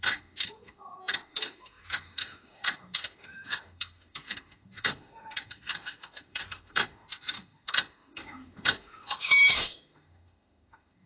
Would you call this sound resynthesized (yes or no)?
yes